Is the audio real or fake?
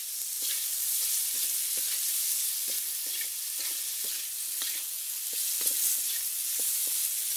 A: real